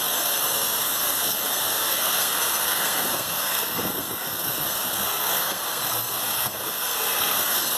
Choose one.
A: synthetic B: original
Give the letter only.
A